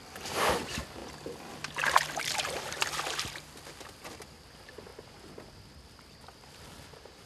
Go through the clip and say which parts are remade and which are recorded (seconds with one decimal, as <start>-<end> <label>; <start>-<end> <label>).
0.0-7.3 recorded

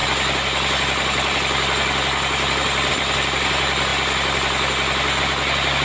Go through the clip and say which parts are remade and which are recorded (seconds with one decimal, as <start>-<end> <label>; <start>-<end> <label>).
0.0-5.8 recorded

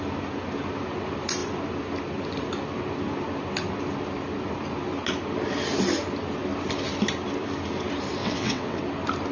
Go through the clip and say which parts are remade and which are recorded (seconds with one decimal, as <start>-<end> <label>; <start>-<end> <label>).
0.0-8.2 recorded; 8.2-8.8 remade; 8.8-9.3 recorded

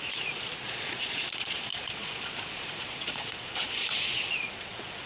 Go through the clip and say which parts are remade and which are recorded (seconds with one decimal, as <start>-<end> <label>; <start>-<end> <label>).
0.0-5.1 remade

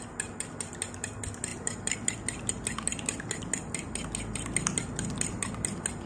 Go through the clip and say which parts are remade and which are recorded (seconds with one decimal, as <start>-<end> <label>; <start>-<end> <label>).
0.0-6.1 recorded

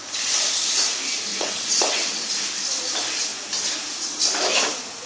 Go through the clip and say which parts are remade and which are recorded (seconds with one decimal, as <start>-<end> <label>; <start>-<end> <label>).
0.0-1.3 recorded; 1.3-2.3 remade; 2.3-5.1 recorded

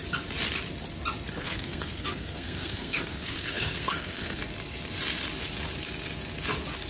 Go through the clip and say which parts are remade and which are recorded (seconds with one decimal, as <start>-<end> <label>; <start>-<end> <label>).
0.0-1.4 recorded; 1.4-4.4 remade; 4.4-6.9 recorded

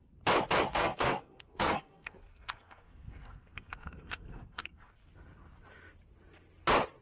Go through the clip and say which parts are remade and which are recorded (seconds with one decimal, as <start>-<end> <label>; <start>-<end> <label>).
0.0-0.7 recorded; 0.7-4.9 remade; 4.9-7.0 recorded